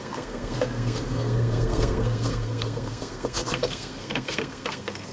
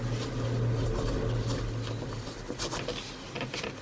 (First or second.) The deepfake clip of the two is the first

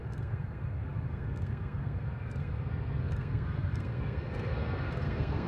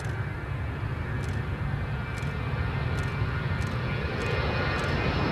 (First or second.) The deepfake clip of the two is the first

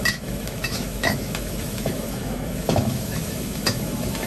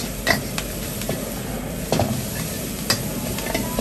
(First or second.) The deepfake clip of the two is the first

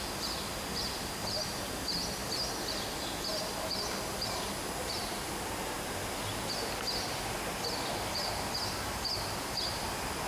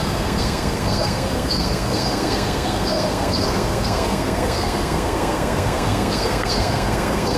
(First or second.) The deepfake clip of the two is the second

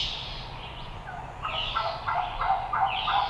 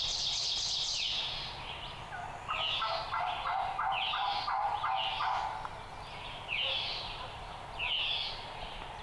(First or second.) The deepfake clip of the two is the first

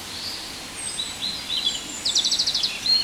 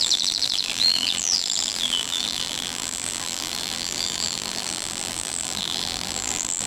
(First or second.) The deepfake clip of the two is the second